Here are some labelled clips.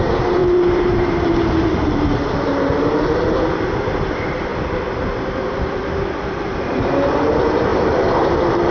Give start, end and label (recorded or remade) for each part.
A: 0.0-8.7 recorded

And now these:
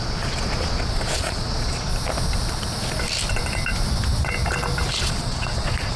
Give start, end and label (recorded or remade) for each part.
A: 0.0-1.9 remade; 1.9-5.0 recorded; 5.0-6.0 remade

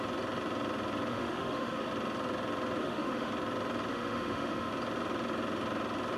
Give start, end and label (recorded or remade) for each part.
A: 0.0-1.1 recorded; 1.1-1.9 remade; 1.9-2.8 recorded; 2.8-3.3 remade; 3.3-3.9 recorded; 3.9-4.7 remade; 4.7-6.2 recorded

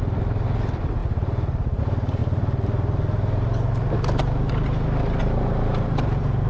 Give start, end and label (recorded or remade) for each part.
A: 0.0-1.0 recorded; 1.0-1.8 remade; 1.8-2.2 recorded; 2.2-4.5 remade; 4.5-5.2 recorded; 5.2-6.5 remade

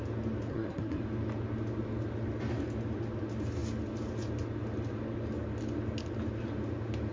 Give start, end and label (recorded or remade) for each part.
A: 0.0-0.5 recorded; 0.5-1.0 remade; 1.0-7.1 recorded